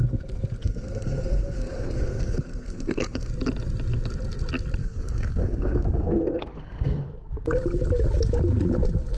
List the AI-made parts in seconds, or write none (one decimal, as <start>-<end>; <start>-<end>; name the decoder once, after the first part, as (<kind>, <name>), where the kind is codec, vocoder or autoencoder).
0.6-3.3 (codec, SNAC); 4.8-7.1